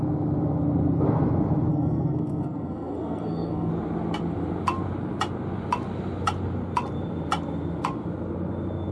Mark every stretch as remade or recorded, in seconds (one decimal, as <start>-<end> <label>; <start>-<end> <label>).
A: 0.0-1.7 recorded; 1.7-3.7 remade; 3.7-8.9 recorded